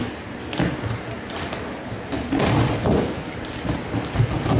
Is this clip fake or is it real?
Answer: real